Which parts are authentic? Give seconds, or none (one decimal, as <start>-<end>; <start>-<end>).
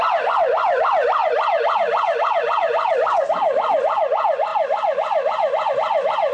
0.0-6.3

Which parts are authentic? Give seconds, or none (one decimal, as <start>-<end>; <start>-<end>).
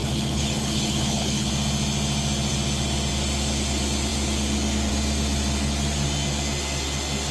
1.5-7.3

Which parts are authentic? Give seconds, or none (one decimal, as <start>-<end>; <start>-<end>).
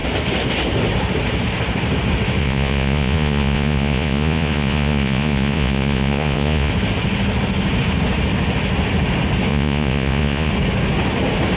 0.0-2.4; 6.7-9.5; 10.5-11.6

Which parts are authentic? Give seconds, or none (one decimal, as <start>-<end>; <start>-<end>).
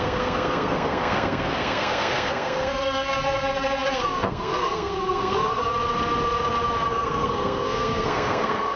5.7-6.9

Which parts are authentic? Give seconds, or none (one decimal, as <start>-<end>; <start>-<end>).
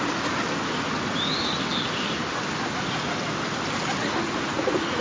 0.0-4.0